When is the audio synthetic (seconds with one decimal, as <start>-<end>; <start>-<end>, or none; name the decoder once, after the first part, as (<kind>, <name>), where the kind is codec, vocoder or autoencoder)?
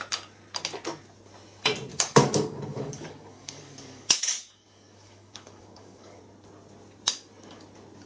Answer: 1.9-6.2 (codec, DAC)